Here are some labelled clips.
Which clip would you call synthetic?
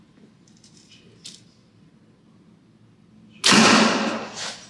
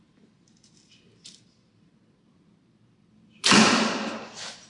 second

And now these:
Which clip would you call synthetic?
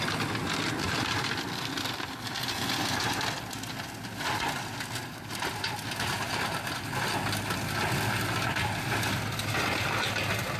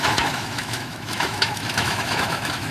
second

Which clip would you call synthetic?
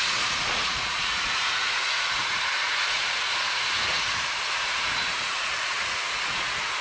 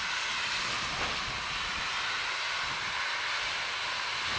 first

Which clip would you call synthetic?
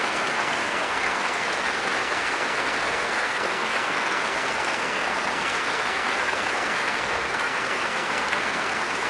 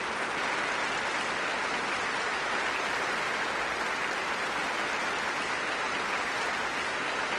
first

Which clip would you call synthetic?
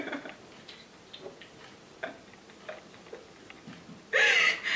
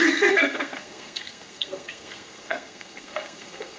second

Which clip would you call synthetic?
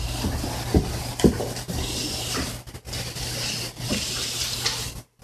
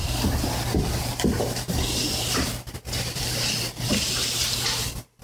second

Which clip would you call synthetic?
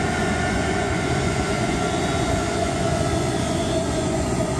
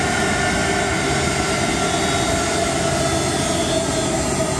first